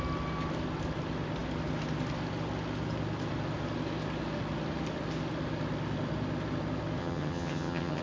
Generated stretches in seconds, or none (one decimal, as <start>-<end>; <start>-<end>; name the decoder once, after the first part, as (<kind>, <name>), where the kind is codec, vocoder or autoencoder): 7.0-8.0 (vocoder, HiFi-GAN)

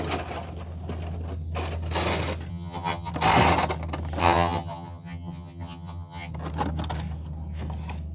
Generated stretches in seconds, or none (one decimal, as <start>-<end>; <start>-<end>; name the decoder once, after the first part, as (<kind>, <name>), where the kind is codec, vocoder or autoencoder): 2.5-3.1 (vocoder, HiFi-GAN); 4.2-6.3

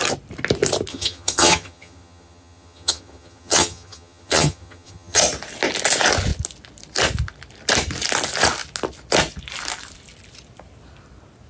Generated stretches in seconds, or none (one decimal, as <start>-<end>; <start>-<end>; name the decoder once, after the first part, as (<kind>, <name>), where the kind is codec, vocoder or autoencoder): 0.9-5.2 (vocoder, HiFi-GAN)

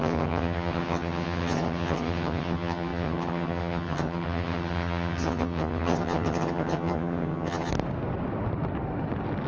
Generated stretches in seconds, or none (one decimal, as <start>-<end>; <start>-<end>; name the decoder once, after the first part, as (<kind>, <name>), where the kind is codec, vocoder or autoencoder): 0.0-7.7 (vocoder, HiFi-GAN)

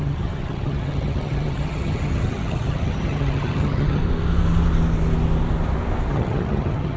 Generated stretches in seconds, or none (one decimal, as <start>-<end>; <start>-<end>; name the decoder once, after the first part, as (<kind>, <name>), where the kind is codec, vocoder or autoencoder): 0.0-4.0 (vocoder, HiFi-GAN); 6.1-7.0